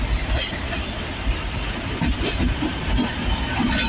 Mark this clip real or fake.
real